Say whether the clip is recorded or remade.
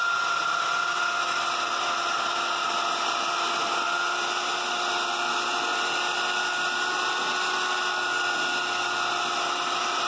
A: recorded